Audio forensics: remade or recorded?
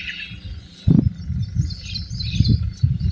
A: remade